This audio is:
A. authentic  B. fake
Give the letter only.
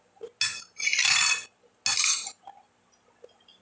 A